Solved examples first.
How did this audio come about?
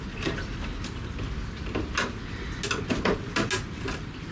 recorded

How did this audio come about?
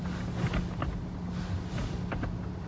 recorded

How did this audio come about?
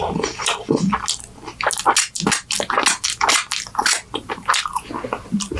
recorded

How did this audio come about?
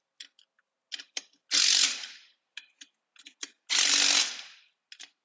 recorded